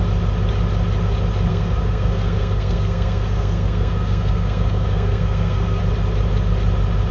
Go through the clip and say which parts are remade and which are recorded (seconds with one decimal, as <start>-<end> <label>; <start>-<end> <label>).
0.0-1.5 recorded; 1.5-5.8 remade; 5.8-7.1 recorded